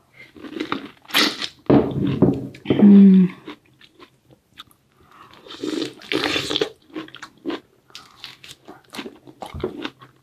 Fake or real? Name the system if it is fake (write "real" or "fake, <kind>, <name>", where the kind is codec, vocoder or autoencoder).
real